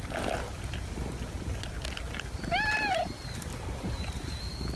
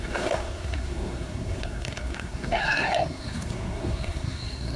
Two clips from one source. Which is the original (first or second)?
first